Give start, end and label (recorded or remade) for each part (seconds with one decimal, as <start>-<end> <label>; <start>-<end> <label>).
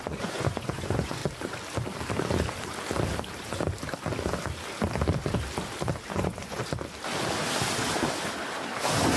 0.0-1.2 remade; 1.2-6.1 recorded; 6.1-6.6 remade; 6.6-9.2 recorded